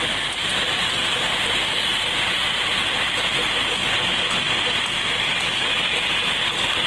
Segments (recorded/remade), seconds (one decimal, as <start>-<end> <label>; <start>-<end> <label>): 0.0-0.5 recorded; 0.5-3.0 remade; 3.0-6.9 recorded